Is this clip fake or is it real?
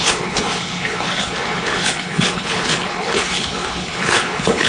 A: fake